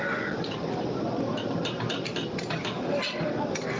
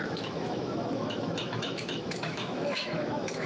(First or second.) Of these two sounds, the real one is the first